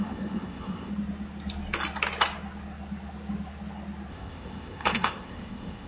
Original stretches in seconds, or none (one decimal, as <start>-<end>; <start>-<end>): 0.9-4.1